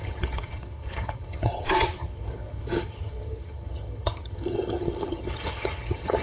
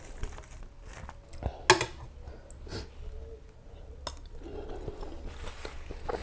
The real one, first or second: second